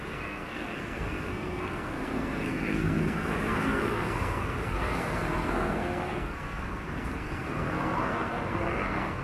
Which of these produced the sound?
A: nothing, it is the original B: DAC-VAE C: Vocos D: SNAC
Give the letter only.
D